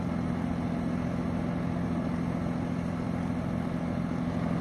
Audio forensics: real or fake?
real